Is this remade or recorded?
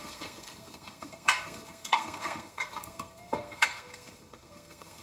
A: remade